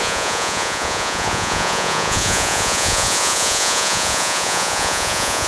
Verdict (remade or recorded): remade